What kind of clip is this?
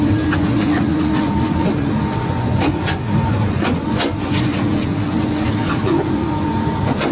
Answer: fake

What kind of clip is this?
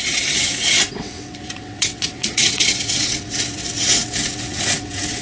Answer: fake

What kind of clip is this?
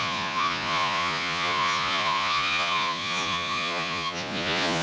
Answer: fake